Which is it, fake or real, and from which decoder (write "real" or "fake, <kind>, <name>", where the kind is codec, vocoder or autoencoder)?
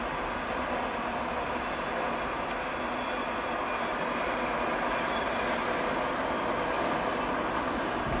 real